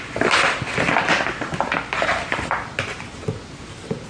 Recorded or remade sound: recorded